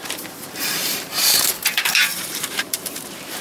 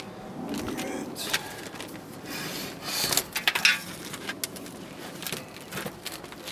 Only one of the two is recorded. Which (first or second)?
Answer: second